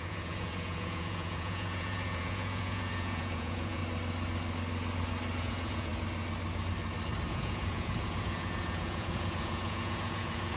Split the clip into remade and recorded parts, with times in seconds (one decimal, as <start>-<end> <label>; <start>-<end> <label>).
0.0-3.8 remade; 3.8-5.4 recorded; 5.4-5.9 remade; 5.9-7.3 recorded; 7.3-10.6 remade